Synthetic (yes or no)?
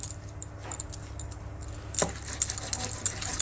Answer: no